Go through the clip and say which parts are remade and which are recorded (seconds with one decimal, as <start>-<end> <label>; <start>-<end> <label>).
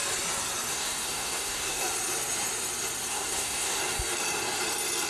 0.0-0.7 recorded; 0.7-1.8 remade; 1.8-3.1 recorded; 3.1-3.8 remade; 3.8-5.1 recorded